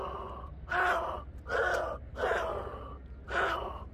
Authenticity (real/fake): real